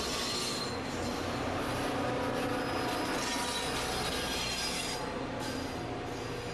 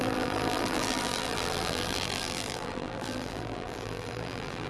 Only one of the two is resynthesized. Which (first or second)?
second